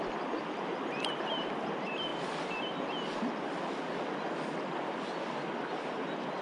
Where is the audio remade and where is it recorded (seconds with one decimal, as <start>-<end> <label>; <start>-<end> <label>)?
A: 0.0-6.4 recorded